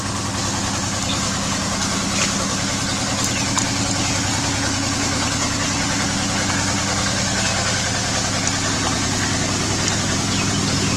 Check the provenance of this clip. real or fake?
real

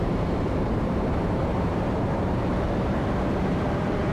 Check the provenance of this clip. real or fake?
fake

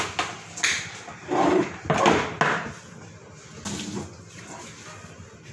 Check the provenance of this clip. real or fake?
real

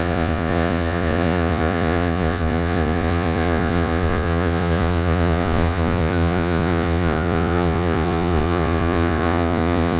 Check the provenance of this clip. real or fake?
fake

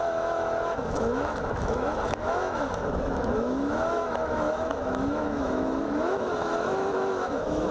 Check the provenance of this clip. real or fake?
fake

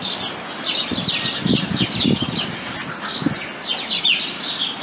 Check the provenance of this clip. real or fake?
real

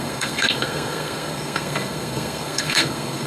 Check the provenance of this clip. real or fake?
fake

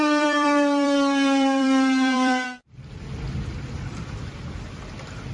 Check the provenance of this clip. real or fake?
fake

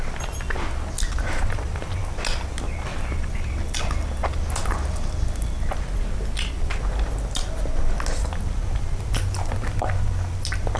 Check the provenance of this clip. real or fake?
real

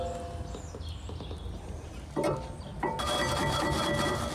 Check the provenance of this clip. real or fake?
real